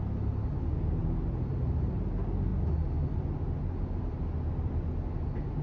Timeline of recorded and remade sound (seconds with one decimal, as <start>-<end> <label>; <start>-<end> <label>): 0.0-5.6 recorded